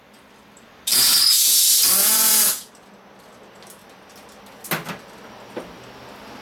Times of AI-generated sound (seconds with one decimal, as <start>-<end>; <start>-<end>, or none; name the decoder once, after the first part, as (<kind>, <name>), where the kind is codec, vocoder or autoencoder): 0.9-1.6 (vocoder, Vocos); 2.0-2.7